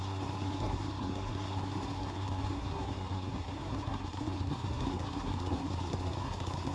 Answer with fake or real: fake